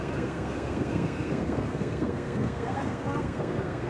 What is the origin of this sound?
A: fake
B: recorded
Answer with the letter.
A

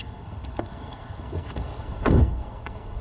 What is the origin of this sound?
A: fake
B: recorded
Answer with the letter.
A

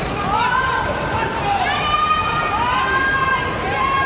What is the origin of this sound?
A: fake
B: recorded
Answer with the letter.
B